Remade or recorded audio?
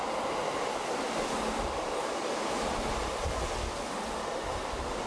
recorded